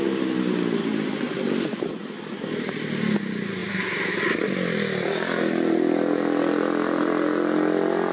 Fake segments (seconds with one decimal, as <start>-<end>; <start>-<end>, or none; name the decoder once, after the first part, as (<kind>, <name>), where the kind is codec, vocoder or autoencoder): none